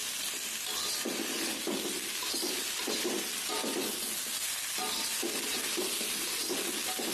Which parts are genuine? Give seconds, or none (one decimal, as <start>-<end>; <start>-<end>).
0.0-7.1